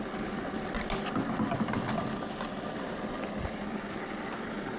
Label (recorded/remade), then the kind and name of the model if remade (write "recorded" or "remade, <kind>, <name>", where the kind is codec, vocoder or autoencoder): recorded